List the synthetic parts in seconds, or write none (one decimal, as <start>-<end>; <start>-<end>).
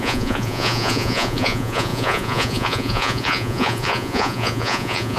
0.0-5.2